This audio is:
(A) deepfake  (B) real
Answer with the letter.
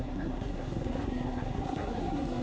A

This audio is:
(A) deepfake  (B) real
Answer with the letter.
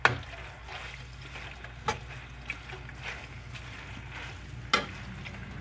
B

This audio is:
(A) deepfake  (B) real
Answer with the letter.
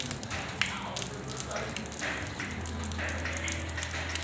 B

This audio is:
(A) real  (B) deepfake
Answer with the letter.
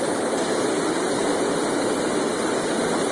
A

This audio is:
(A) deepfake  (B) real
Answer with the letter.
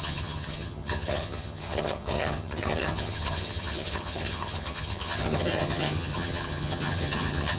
A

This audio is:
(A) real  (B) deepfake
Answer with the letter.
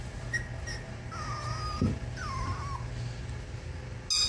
A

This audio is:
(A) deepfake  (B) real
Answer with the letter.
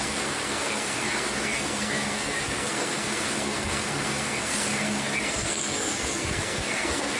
A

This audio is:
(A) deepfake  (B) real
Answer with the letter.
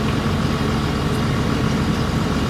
B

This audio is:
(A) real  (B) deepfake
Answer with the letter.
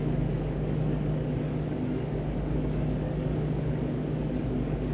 B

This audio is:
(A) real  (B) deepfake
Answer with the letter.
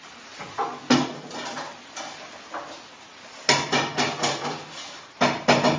A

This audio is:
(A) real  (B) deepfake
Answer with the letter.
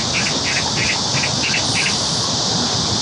A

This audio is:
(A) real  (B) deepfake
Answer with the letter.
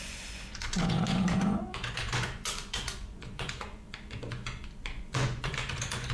B